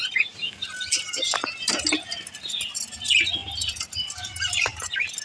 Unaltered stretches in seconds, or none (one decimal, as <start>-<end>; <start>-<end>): 0.0-4.7